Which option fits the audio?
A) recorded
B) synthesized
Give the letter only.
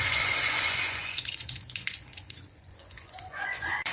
B